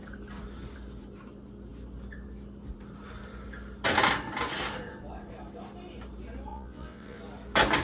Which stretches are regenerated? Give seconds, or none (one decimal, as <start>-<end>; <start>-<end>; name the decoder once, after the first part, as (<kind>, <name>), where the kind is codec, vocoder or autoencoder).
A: 6.5-7.2 (vocoder, WaveNeXt)